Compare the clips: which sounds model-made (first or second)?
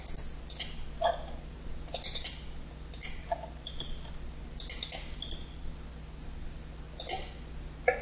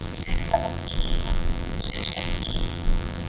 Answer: second